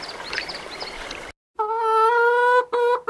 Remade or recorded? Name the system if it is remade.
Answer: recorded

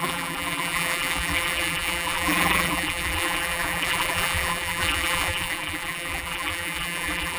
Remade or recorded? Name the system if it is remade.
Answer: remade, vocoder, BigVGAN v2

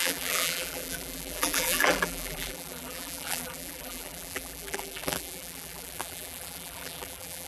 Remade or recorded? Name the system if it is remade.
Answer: remade, vocoder, BigVGAN v2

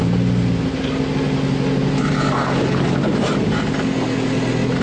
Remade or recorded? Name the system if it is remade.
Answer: recorded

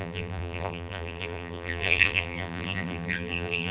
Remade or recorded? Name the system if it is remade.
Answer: remade, vocoder, BigVGAN v2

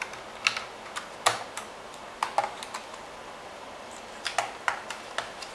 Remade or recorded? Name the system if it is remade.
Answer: recorded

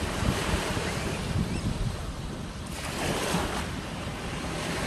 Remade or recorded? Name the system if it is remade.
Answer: remade, vocoder, BigVGAN v2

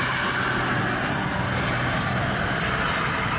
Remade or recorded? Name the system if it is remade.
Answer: recorded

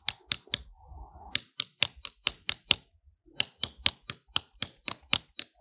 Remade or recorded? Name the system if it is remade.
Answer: recorded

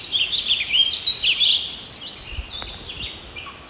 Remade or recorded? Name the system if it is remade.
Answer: recorded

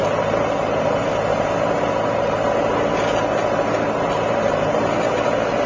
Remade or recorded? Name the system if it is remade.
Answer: recorded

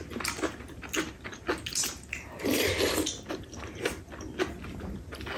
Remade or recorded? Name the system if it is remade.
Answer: recorded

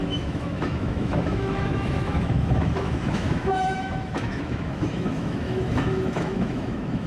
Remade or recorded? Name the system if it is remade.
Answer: remade, autoencoder, DAC-VAE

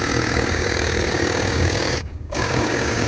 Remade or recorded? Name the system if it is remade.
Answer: remade, codec, DAC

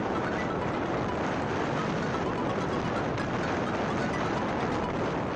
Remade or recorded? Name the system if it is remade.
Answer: recorded